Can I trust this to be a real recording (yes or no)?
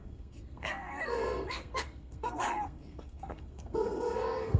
no